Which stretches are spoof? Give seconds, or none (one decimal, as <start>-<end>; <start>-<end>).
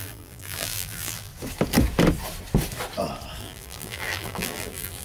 0.0-1.3; 3.4-5.0